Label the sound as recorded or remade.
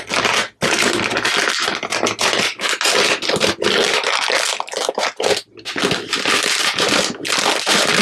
recorded